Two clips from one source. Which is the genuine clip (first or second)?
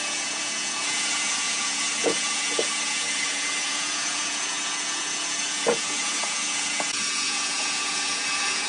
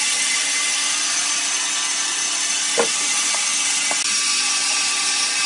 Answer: second